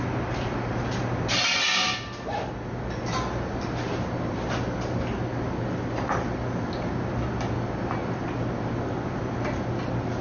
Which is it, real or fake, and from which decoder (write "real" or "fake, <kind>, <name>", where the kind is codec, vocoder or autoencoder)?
real